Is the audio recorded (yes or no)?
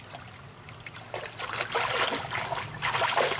yes